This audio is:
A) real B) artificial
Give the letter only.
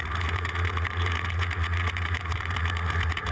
B